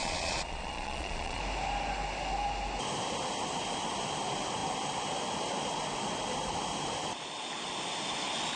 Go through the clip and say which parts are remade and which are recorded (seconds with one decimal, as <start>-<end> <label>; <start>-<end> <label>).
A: 0.0-1.4 remade; 1.4-8.6 recorded

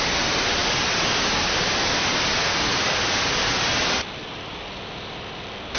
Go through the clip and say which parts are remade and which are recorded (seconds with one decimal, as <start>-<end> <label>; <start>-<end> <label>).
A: 0.0-5.8 recorded

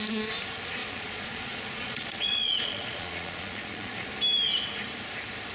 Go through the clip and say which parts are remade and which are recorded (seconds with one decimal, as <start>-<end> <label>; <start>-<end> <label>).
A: 0.0-0.8 recorded; 0.8-4.1 remade; 4.1-5.5 recorded

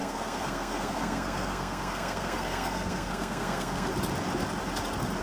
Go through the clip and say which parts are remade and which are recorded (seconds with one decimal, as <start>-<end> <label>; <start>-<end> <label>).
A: 0.0-3.9 remade; 3.9-5.2 recorded

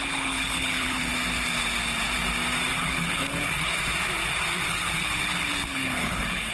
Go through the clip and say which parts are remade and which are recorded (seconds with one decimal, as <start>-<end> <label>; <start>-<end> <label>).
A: 0.0-1.1 remade; 1.1-2.7 recorded; 2.7-3.8 remade; 3.8-4.7 recorded; 4.7-6.5 remade

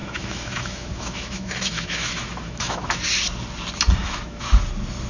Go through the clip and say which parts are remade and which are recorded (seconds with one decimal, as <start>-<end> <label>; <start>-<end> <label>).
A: 0.0-3.0 remade; 3.0-4.0 recorded; 4.0-4.5 remade; 4.5-5.1 recorded

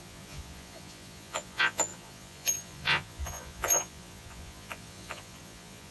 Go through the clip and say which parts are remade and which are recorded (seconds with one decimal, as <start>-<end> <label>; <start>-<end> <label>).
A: 0.0-5.9 remade